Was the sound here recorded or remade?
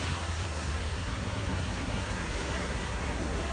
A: remade